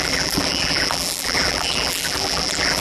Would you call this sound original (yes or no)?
no